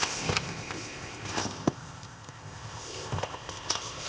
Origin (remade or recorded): remade